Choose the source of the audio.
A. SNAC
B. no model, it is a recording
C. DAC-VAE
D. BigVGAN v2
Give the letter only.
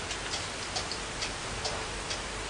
B